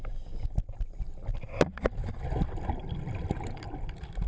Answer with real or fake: real